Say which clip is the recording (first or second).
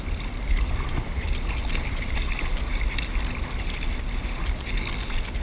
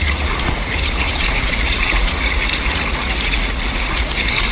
first